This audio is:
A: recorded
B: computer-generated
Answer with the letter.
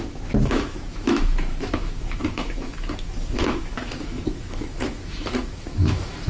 B